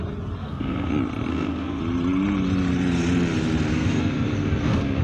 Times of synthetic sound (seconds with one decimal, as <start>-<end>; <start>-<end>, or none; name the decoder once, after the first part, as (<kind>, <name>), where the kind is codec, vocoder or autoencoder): 0.4-0.9 (codec, SNAC); 1.3-1.8; 3.7-5.0